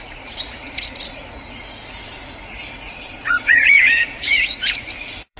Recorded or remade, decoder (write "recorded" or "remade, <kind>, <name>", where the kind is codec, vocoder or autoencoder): remade, vocoder, Vocos